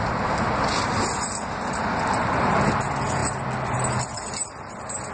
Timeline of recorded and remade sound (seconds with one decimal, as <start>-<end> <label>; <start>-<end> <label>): 0.0-5.1 recorded